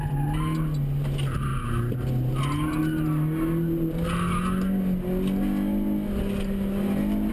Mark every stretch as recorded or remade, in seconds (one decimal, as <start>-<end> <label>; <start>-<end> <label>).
0.0-7.3 recorded